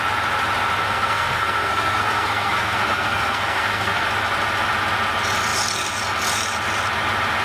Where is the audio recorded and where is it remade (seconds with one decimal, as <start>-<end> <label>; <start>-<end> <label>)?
0.0-0.8 recorded; 0.8-4.1 remade; 4.1-7.4 recorded